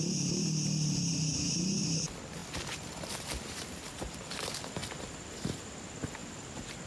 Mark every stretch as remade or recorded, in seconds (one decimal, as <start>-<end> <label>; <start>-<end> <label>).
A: 0.0-6.9 recorded